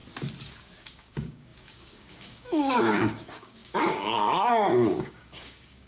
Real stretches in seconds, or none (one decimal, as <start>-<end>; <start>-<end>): 0.0-0.6